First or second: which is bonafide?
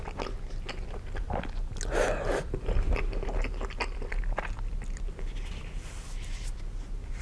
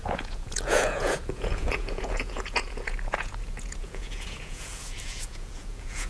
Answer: first